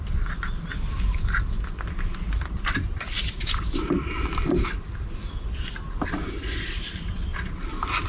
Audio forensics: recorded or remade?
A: recorded